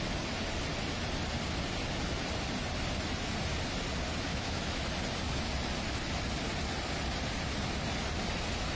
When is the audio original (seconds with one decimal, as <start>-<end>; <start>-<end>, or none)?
0.0-4.3; 4.8-8.8